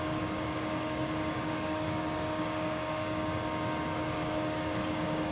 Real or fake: fake